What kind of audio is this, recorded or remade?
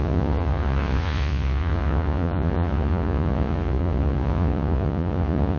remade